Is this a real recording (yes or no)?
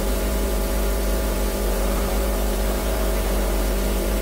no